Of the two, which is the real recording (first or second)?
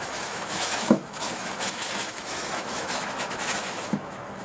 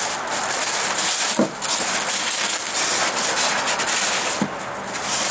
second